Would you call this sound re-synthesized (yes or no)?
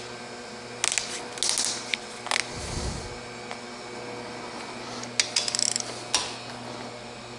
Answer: no